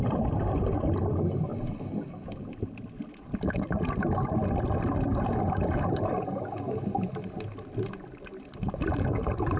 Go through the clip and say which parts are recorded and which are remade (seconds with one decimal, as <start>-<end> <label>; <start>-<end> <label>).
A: 0.0-9.6 recorded